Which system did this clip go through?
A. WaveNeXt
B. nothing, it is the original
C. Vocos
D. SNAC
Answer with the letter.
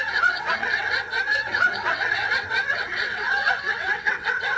A